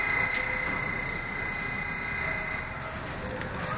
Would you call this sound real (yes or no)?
yes